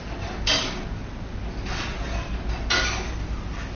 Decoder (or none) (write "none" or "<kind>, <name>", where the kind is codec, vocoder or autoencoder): none